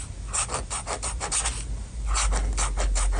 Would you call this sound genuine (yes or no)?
yes